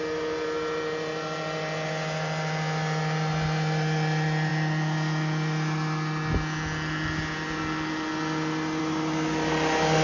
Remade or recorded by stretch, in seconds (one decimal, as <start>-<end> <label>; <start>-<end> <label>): 0.0-10.0 recorded